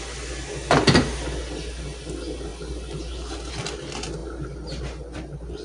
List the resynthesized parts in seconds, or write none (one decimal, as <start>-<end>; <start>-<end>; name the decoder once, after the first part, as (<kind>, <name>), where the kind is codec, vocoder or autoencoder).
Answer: none